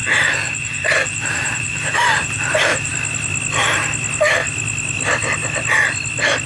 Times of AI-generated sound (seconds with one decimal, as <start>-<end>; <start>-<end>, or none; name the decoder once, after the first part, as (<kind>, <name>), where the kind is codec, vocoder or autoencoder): 0.0-2.9 (vocoder, BigVGAN v2)